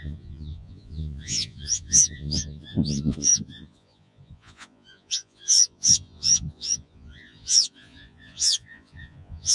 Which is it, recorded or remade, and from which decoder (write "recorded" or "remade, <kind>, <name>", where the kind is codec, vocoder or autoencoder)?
remade, vocoder, Vocos